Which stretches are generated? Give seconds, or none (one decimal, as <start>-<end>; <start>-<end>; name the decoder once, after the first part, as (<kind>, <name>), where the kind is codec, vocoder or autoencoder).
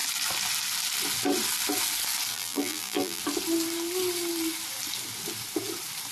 2.3-3.2 (vocoder, BigVGAN v2)